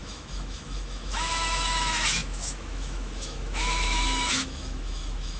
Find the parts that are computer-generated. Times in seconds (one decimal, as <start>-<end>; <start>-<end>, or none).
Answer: 0.0-5.4